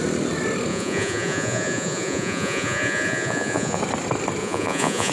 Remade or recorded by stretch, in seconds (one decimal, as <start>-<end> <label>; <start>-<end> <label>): 0.0-0.7 recorded; 0.7-3.8 remade; 3.8-4.4 recorded; 4.4-5.1 remade